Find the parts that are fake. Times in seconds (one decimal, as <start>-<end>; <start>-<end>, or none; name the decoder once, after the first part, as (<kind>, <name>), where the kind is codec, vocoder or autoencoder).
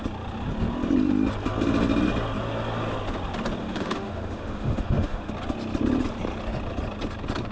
3.6-5.3 (autoencoder, DAC-VAE)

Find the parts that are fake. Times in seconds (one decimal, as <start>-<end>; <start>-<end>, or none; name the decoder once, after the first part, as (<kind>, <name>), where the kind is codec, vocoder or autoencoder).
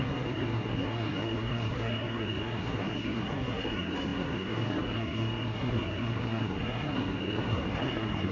0.0-8.3 (codec, SNAC)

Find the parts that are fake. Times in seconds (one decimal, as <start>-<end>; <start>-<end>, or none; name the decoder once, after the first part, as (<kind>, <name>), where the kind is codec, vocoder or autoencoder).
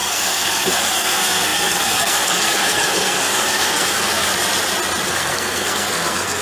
0.0-4.3 (codec, SNAC); 5.1-6.4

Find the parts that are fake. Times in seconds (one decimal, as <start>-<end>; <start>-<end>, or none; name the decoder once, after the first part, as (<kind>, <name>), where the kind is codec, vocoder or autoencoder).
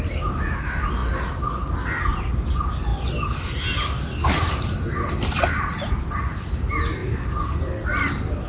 none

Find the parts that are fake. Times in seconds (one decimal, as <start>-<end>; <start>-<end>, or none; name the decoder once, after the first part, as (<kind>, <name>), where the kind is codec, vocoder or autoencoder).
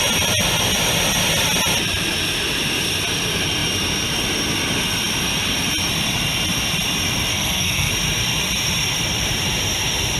7.3-7.9 (codec, SNAC)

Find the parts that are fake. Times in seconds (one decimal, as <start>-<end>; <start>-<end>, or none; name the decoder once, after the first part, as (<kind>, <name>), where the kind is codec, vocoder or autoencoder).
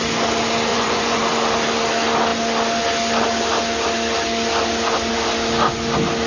0.7-1.2 (vocoder, Vocos)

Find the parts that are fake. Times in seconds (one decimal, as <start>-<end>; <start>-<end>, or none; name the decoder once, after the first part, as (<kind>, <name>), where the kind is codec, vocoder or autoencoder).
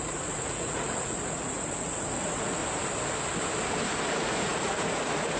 0.0-2.6 (vocoder, Vocos); 4.1-5.4